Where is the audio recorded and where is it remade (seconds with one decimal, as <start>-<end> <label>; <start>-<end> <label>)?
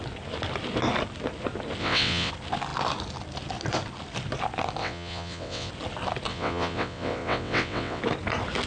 0.0-1.8 recorded; 1.8-2.3 remade; 2.3-4.8 recorded; 4.8-5.7 remade; 5.7-6.3 recorded; 6.3-8.0 remade; 8.0-8.7 recorded